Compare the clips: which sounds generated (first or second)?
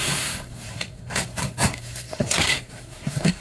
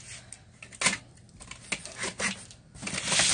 first